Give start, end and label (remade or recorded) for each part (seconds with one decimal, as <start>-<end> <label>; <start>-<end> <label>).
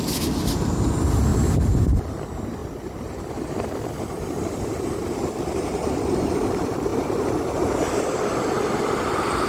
0.0-6.9 remade; 6.9-7.5 recorded; 7.5-9.5 remade